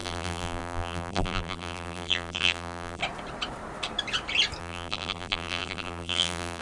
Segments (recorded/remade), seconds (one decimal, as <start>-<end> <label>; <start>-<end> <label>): 0.0-3.0 remade; 3.0-4.6 recorded; 4.6-6.6 remade